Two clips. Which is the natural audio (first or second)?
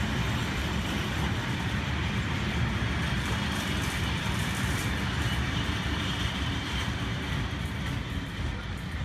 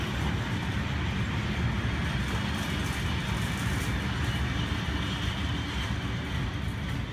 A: second